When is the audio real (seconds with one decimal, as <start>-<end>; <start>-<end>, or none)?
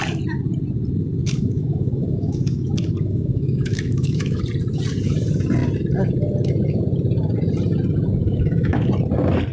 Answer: 0.0-1.2; 4.4-8.2; 8.9-9.5